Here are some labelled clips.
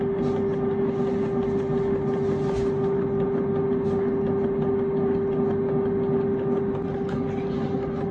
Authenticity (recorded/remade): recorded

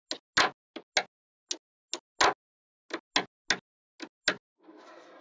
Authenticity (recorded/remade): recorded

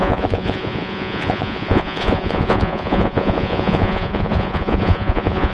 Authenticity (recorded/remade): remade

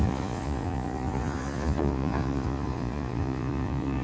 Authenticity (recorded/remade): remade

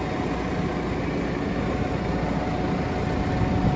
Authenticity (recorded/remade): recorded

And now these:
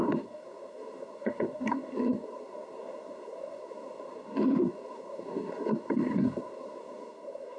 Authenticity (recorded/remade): remade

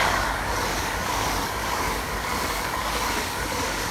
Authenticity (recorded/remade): remade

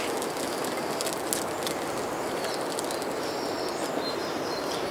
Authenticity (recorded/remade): recorded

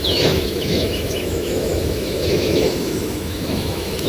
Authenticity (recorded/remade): remade